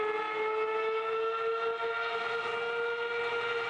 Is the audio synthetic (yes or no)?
no